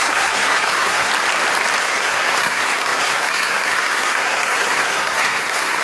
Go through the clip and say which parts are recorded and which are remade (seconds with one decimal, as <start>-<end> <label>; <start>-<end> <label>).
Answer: 0.0-1.1 remade; 1.1-1.8 recorded; 1.8-5.8 remade